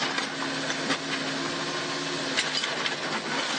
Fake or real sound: real